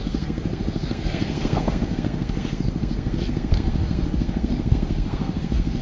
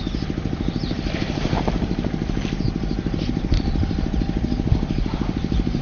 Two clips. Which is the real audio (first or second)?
second